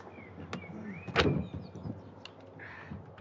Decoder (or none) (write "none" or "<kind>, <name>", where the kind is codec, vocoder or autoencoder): none